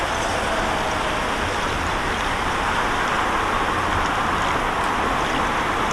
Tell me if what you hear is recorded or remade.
recorded